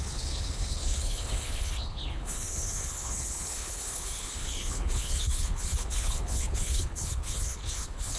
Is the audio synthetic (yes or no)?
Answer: yes